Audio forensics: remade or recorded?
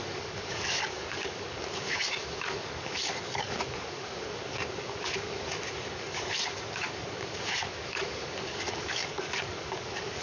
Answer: remade